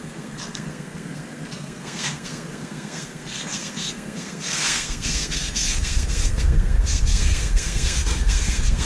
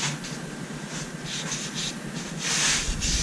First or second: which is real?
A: second